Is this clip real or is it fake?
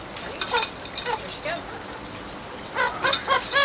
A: real